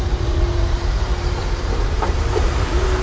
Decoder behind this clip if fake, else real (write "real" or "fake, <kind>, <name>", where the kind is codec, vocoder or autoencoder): fake, vocoder, BigVGAN v2